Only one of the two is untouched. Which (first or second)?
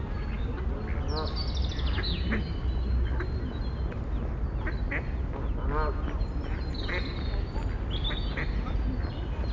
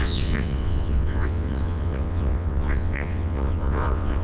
first